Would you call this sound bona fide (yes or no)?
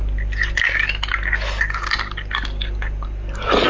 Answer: yes